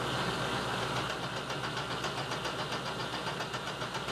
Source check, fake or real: real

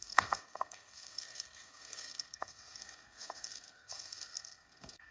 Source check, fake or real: fake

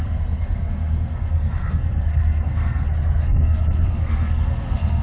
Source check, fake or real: fake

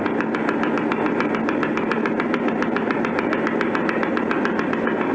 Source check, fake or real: real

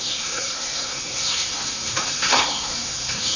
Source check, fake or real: fake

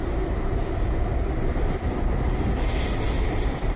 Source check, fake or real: real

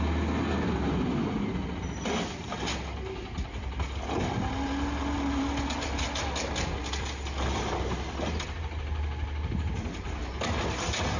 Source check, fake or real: real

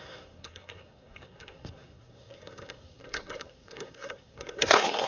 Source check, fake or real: fake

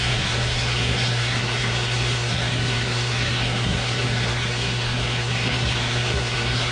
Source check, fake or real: fake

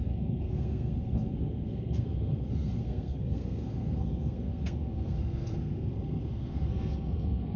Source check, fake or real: fake